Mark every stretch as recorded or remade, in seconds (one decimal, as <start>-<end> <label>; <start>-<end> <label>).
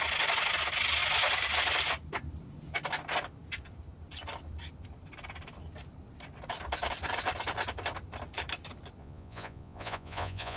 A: 0.0-9.0 recorded; 9.0-10.6 remade